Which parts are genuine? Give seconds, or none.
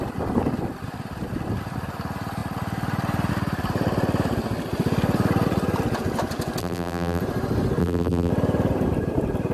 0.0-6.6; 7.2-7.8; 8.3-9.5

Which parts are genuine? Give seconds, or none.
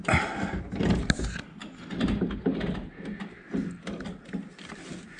0.0-5.2